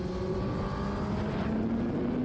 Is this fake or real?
real